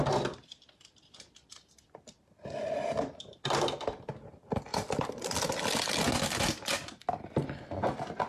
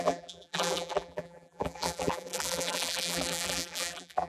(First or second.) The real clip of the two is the first